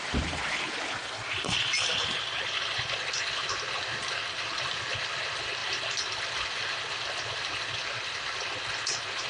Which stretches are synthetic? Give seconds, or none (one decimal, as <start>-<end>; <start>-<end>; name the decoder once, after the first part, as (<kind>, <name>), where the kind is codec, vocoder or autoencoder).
5.6-6.2 (vocoder, BigVGAN v2)